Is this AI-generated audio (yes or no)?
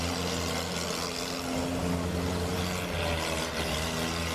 no